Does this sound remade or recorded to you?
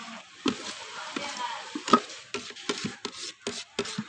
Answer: recorded